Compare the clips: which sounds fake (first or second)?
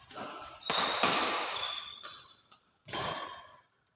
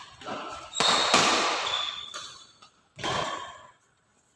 first